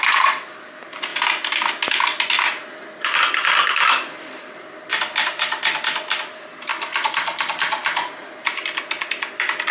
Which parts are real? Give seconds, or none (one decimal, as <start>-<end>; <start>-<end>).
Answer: 1.1-3.2